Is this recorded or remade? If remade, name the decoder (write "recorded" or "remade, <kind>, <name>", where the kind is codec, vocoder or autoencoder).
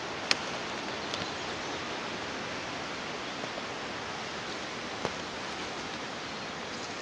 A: recorded